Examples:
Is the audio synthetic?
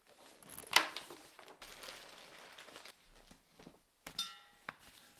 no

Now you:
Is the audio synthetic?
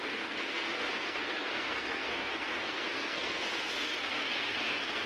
yes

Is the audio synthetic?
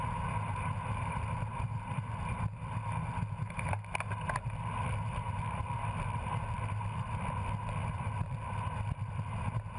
no